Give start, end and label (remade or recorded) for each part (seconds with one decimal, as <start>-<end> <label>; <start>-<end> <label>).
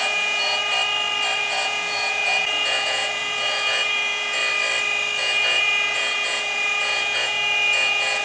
0.0-0.6 remade; 0.6-1.4 recorded; 1.4-4.4 remade; 4.4-5.2 recorded; 5.2-8.2 remade